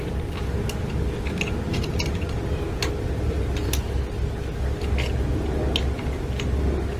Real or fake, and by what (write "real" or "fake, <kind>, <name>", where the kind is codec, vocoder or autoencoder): real